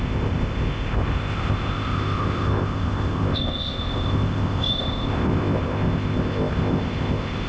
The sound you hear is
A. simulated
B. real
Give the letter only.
A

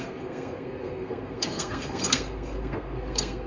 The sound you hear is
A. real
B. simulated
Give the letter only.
B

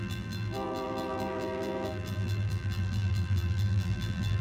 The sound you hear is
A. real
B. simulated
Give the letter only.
B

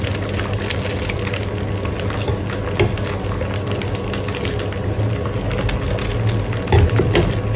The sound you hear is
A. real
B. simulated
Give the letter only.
A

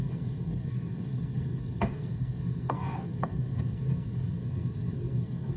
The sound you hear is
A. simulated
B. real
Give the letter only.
A